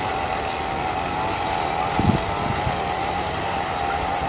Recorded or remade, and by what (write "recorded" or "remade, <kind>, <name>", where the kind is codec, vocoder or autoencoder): recorded